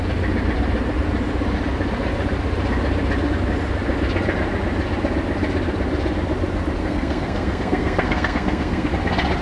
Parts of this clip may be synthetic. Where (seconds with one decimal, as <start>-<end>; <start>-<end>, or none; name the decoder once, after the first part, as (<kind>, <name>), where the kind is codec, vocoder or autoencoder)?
6.8-8.9 (codec, SNAC)